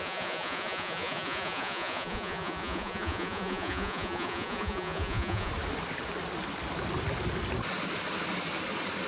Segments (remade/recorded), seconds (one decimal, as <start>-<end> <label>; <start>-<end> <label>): 0.0-5.5 remade; 5.5-9.1 recorded